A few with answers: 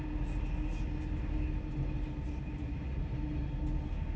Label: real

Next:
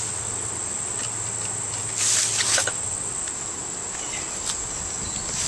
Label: real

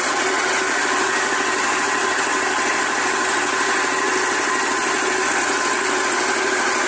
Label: real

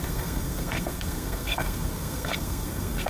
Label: fake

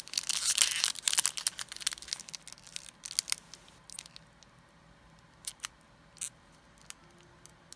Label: real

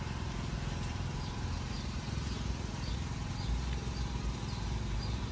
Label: fake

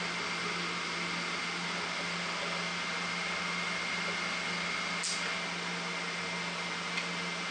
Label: real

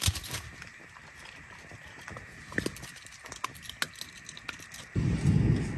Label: real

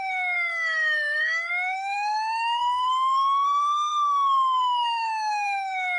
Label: fake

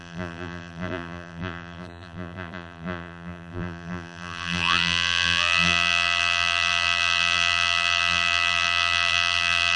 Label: fake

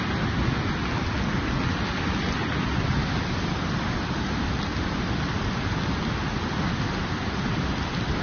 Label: real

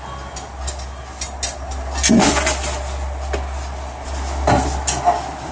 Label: real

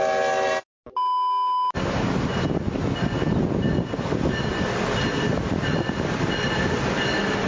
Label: real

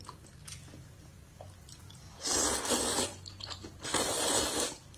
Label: real